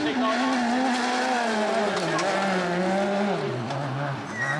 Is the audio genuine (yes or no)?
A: yes